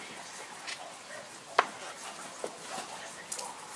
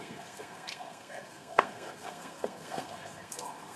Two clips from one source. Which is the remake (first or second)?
second